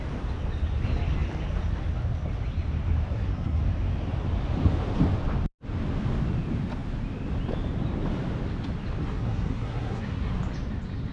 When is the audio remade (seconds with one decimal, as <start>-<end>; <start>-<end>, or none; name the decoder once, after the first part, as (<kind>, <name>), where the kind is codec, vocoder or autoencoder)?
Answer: 3.1-3.6 (codec, SNAC); 9.0-10.3